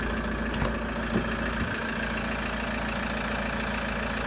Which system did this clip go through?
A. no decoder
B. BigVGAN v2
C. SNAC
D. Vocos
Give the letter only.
A